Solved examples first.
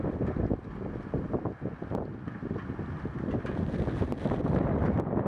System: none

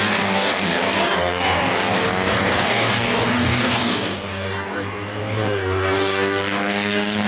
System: codec, DAC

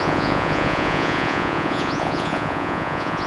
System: vocoder, Vocos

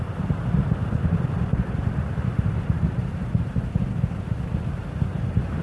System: none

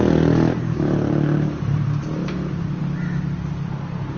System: none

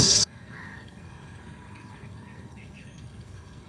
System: codec, SNAC